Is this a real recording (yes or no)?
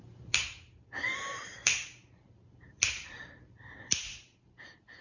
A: no